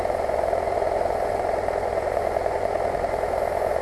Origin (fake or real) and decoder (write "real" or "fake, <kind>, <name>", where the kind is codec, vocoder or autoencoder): fake, vocoder, Vocos